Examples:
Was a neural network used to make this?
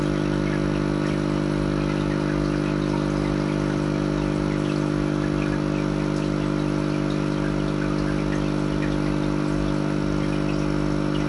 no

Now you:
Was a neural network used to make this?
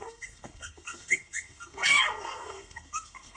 yes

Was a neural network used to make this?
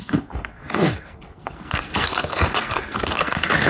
yes